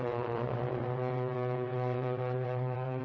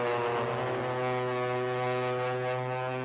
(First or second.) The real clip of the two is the second